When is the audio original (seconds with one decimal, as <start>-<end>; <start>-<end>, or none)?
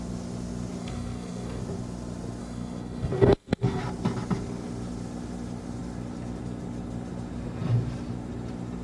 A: 0.0-0.8; 1.6-2.4; 3.8-8.8